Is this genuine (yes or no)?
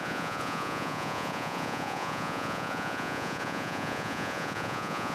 no